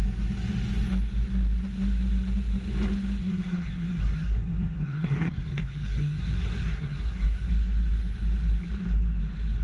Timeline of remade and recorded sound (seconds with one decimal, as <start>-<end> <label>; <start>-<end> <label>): 0.0-3.2 recorded; 3.2-7.5 remade; 7.5-9.6 recorded